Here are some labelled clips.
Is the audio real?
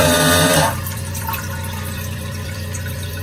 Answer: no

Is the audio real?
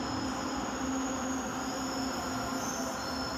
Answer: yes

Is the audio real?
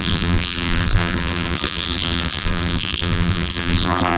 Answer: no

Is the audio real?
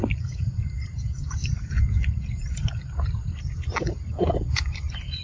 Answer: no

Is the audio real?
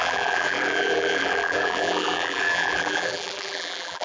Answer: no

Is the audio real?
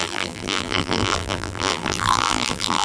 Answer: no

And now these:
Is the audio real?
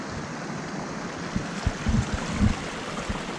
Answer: yes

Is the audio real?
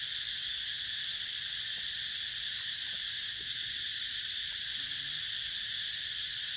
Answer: yes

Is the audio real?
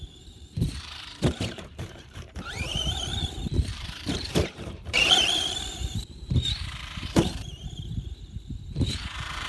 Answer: no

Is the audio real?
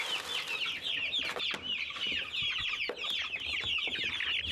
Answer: yes